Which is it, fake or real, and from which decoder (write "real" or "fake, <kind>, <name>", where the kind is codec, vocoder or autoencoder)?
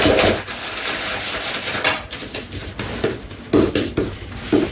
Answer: real